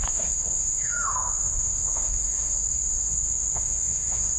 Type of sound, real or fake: fake